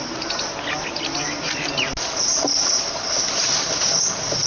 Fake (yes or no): no